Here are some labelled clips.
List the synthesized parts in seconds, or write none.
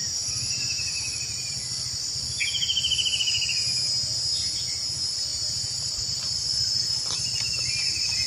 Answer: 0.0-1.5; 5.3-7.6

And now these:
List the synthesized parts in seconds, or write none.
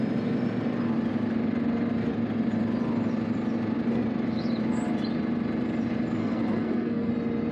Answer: 6.2-7.1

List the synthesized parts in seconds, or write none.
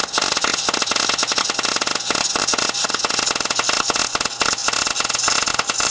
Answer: none